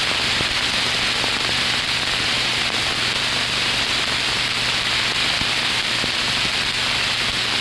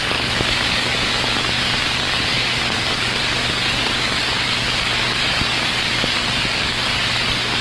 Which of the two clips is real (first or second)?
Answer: first